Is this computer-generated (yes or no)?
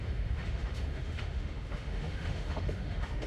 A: yes